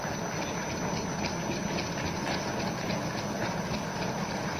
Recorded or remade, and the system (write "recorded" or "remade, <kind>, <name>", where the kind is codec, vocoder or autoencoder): recorded